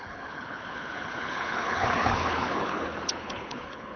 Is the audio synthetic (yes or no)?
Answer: yes